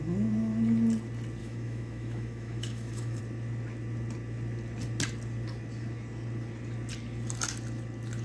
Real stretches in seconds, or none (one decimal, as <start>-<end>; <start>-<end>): 0.0-1.4; 3.2-8.2